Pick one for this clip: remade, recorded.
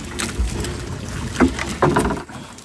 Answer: recorded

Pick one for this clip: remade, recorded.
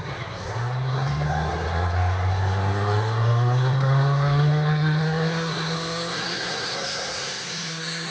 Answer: remade